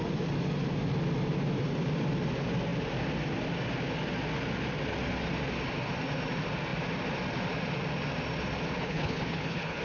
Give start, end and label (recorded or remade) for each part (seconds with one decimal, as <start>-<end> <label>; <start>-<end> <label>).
0.0-8.8 recorded; 8.8-9.8 remade